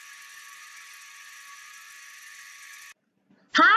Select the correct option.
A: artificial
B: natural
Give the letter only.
B